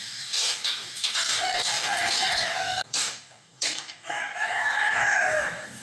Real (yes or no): no